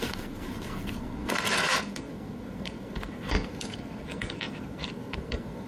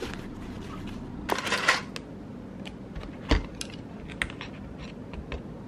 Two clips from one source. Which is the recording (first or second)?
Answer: second